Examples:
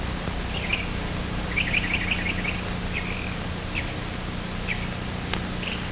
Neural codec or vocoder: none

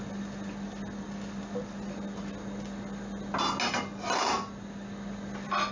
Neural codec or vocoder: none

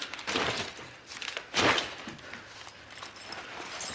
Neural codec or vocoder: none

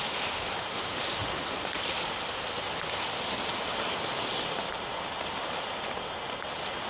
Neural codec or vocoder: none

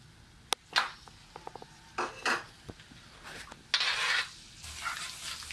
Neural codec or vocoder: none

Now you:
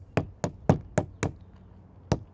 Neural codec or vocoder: none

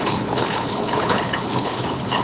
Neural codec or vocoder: codec, HILCodec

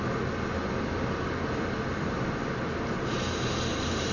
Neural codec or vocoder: none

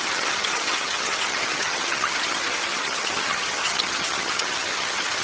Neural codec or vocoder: vocoder, HiFi-GAN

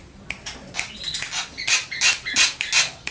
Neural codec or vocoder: none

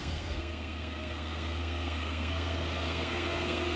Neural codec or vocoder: codec, SNAC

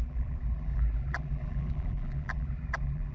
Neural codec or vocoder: vocoder, BigVGAN v2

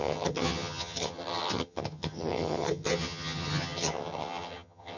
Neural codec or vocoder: vocoder, HiFi-GAN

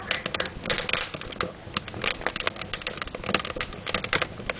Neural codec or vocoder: none